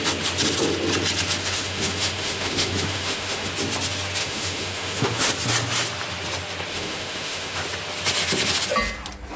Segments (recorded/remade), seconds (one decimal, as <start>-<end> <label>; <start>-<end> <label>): 0.0-1.4 recorded; 1.4-3.5 remade; 3.5-4.2 recorded; 4.2-5.3 remade; 5.3-6.7 recorded; 6.7-7.6 remade; 7.6-9.4 recorded